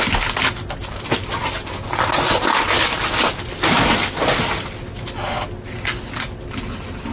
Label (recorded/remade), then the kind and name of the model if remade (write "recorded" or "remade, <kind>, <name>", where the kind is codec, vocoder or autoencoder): recorded